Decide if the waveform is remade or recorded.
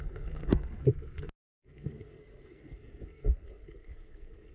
remade